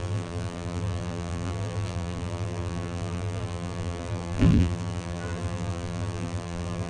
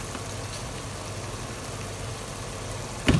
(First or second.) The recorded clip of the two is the second